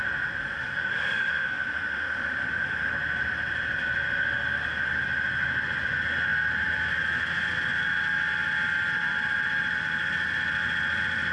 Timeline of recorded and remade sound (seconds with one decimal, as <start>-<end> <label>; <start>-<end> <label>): 0.0-0.4 recorded; 0.4-2.9 remade; 2.9-11.3 recorded